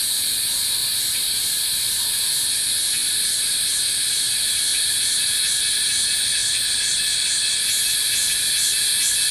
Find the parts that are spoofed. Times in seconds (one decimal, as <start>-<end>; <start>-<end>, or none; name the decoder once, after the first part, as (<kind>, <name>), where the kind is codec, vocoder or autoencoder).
0.8-2.2 (vocoder, BigVGAN v2); 3.0-5.4